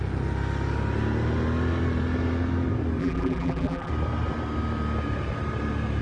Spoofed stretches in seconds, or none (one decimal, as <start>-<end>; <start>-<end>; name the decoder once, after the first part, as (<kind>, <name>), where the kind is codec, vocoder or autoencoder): 3.0-3.9 (vocoder, BigVGAN v2)